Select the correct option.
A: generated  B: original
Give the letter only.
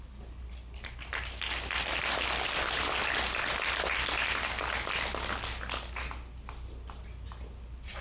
B